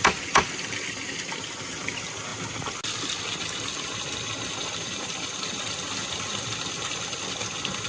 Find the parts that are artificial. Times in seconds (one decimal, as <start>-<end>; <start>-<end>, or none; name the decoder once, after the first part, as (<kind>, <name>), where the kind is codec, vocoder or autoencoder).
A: none